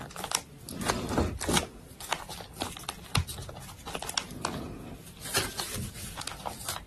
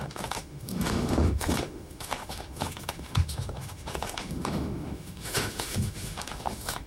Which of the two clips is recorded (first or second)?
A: first